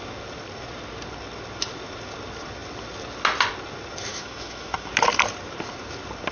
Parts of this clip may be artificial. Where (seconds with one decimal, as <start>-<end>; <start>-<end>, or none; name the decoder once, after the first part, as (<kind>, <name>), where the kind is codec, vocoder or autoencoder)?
4.1-4.9 (autoencoder, DAC-VAE)